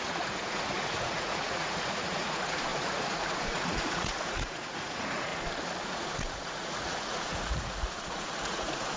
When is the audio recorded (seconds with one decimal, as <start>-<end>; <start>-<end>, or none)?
5.3-5.8